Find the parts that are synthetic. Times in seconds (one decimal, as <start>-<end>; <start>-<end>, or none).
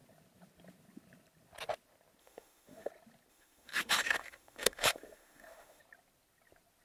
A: 2.2-2.9; 3.3-5.8